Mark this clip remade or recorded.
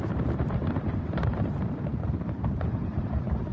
remade